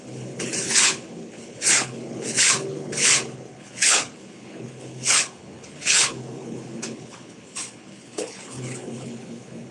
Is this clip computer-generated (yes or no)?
yes